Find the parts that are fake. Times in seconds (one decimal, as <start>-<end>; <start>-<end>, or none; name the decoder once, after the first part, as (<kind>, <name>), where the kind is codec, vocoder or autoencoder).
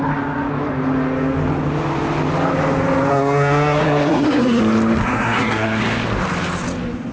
3.1-4.6 (codec, SNAC); 5.0-5.8